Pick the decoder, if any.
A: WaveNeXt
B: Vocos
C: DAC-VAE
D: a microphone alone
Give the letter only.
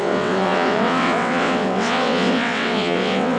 A